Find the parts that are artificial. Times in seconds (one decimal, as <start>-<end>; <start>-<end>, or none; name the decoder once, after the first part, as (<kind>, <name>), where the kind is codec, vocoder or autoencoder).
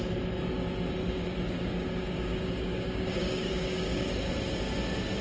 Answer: 1.0-4.1 (codec, DAC)